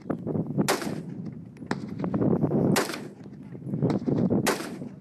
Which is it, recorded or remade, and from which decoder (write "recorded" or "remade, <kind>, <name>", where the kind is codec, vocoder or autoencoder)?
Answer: recorded